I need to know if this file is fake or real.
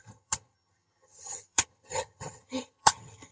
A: fake